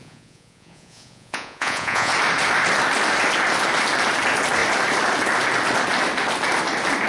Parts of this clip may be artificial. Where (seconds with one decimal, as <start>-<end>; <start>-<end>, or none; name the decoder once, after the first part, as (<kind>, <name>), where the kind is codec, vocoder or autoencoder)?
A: 0.0-2.1 (vocoder, Vocos)